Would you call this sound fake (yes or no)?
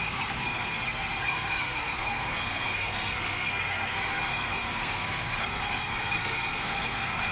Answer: yes